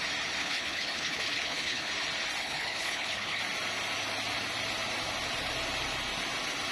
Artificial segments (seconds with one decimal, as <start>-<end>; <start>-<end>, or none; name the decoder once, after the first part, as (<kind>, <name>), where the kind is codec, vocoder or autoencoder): 0.4-1.9 (codec, HILCodec); 2.4-3.4